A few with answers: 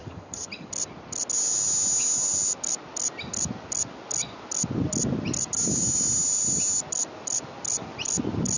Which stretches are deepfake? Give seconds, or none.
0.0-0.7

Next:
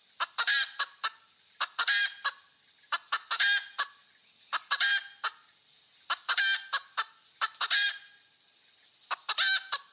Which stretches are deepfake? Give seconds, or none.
none

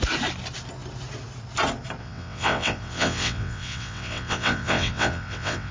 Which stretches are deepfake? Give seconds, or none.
2.0-5.7

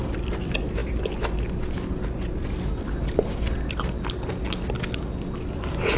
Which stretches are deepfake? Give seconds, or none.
none